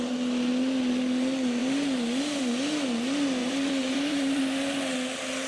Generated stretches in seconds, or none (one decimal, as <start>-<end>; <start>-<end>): 1.6-2.5; 3.4-4.4